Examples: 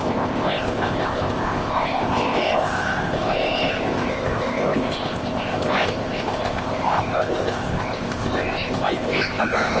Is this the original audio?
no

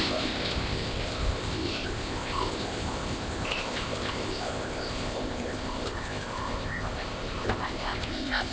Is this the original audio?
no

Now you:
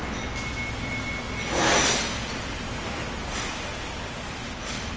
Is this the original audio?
yes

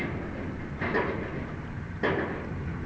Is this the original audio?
yes